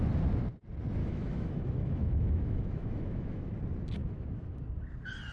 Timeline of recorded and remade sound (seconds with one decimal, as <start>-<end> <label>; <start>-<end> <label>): 0.0-1.0 recorded; 1.0-3.5 remade; 3.5-4.0 recorded; 4.0-4.6 remade; 4.6-5.3 recorded